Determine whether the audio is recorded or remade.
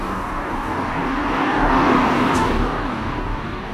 remade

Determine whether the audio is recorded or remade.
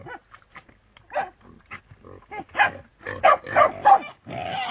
recorded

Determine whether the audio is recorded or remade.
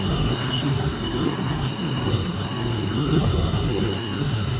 remade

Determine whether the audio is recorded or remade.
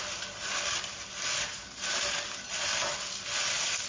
recorded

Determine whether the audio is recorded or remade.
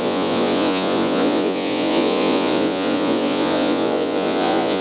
remade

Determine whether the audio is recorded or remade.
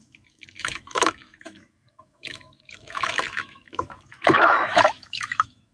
remade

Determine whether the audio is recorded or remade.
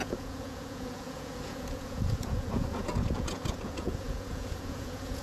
remade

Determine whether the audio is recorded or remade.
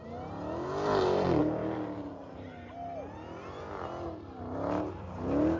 recorded